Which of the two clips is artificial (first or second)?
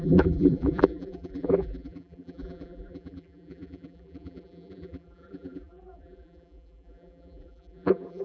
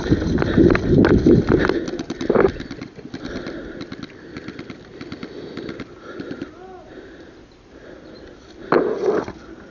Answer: first